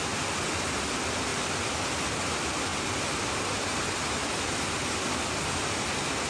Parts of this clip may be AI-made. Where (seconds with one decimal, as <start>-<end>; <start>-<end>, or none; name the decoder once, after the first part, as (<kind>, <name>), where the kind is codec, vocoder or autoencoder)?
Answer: 2.7-3.2 (vocoder, BigVGAN v2)